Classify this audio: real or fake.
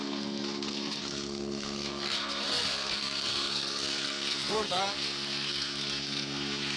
fake